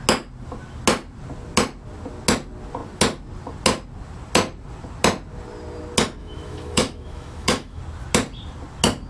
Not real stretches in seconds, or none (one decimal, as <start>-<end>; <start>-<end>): 6.2-7.8